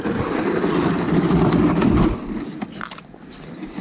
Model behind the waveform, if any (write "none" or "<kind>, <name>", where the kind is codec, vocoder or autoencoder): none